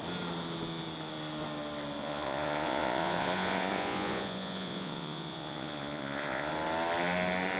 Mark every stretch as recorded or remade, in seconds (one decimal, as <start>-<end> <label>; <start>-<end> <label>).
0.0-2.0 recorded; 2.0-6.5 remade; 6.5-7.6 recorded